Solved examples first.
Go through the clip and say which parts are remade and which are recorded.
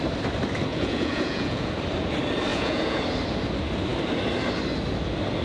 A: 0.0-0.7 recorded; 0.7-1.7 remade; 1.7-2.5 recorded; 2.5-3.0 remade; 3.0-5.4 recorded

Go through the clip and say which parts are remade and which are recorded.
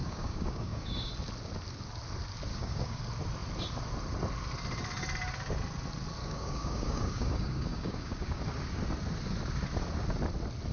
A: 0.0-1.1 remade; 1.1-2.5 recorded; 2.5-3.0 remade; 3.0-6.2 recorded; 6.2-8.4 remade; 8.4-10.7 recorded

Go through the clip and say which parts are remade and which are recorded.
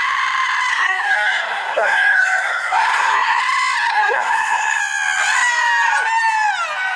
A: 0.0-0.7 recorded; 0.7-3.4 remade; 3.4-3.9 recorded; 3.9-4.8 remade; 4.8-7.0 recorded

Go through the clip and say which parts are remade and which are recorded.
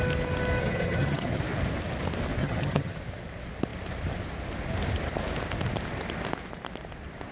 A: 0.0-0.6 recorded; 0.6-1.4 remade; 1.4-2.4 recorded; 2.4-3.0 remade; 3.0-7.3 recorded